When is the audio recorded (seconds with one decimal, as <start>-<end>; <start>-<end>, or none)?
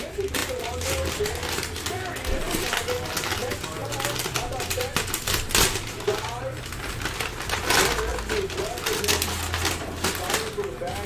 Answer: 0.0-0.4; 1.2-11.1